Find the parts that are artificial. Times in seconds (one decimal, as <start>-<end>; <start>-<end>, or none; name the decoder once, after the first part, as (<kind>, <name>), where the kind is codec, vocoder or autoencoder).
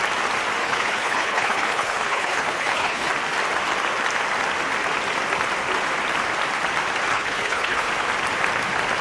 0.6-3.1 (codec, HILCodec); 7.1-7.9